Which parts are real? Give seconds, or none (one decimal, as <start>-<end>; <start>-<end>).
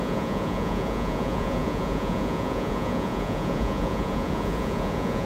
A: none